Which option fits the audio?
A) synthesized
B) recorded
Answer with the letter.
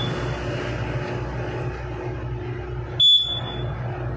B